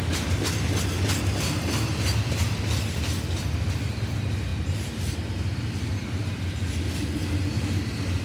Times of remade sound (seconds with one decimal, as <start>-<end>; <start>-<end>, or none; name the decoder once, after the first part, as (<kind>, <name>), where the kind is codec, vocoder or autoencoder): 4.5-6.7 (vocoder, BigVGAN v2)